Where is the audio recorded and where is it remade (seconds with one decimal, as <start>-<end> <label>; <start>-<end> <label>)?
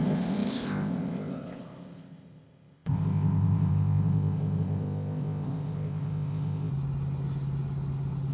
0.0-6.7 remade; 6.7-8.3 recorded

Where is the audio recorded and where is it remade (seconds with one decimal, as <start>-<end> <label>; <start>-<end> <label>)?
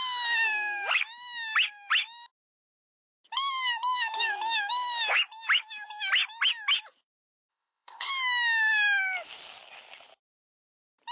0.0-7.5 recorded; 7.5-8.1 remade; 8.1-11.1 recorded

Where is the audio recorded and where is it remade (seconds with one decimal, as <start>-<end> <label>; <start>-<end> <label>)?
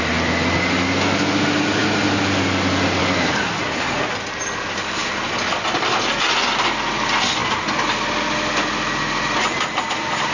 0.0-10.3 recorded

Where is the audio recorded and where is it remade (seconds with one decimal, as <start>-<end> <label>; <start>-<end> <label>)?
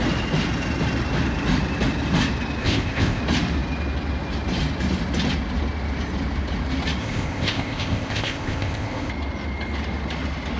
0.0-2.6 recorded; 2.6-3.2 remade; 3.2-7.0 recorded; 7.0-9.1 remade; 9.1-10.6 recorded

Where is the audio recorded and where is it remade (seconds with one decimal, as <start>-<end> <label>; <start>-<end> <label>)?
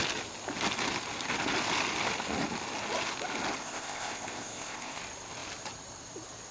0.0-3.6 recorded; 3.6-5.0 remade; 5.0-6.5 recorded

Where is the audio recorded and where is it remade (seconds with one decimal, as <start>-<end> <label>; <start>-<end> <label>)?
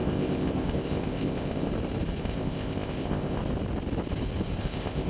0.0-1.7 remade; 1.7-2.2 recorded; 2.2-3.4 remade; 3.4-4.6 recorded; 4.6-5.1 remade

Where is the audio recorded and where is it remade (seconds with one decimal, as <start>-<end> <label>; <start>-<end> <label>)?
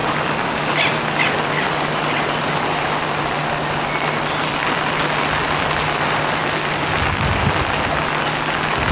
0.0-8.9 recorded